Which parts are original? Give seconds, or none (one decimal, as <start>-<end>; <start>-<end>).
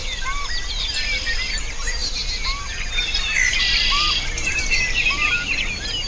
0.0-6.1